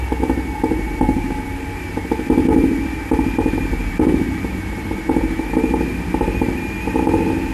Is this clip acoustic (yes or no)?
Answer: yes